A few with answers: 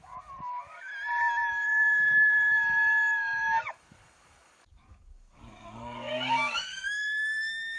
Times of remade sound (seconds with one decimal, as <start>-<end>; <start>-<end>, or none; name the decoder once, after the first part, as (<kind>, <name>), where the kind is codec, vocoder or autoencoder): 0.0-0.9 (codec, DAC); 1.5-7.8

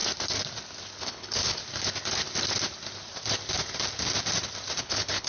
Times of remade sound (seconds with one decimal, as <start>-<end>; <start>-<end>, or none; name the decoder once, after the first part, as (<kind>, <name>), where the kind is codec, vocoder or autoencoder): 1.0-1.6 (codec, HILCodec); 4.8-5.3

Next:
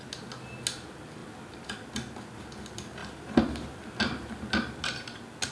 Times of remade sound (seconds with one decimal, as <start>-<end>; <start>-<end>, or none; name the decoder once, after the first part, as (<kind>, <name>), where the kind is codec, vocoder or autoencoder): none